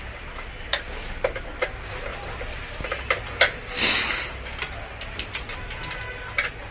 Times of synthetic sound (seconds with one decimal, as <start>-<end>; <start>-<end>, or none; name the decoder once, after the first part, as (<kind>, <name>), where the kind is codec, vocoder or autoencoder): 2.1-6.0 (vocoder, BigVGAN v2)